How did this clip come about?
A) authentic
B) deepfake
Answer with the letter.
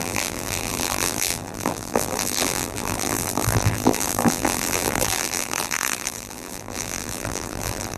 B